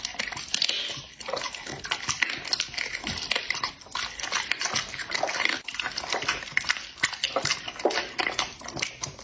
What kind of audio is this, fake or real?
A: real